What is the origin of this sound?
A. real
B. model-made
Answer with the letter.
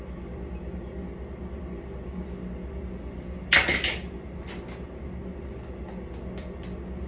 A